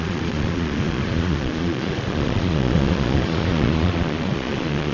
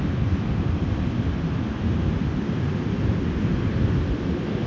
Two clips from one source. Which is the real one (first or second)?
second